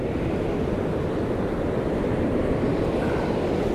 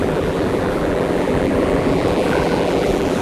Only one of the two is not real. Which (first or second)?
second